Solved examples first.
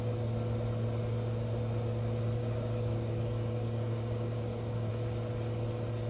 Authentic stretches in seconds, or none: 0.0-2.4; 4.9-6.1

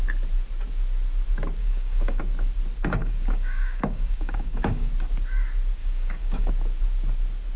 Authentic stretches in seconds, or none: 0.0-1.6; 2.2-3.0; 4.9-5.8; 6.5-7.6

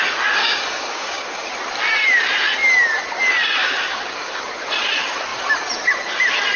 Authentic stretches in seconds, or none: 0.0-0.4; 1.5-3.6; 4.4-6.6

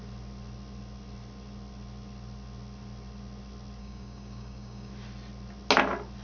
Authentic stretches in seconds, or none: 0.0-3.8; 4.9-6.2